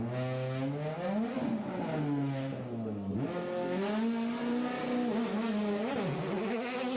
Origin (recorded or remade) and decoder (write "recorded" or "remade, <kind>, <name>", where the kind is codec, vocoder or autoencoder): recorded